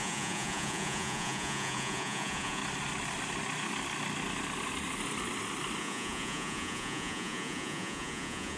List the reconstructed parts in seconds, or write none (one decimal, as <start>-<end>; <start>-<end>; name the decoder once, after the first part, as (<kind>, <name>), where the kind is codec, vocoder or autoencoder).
0.0-2.6 (vocoder, Vocos); 5.8-8.6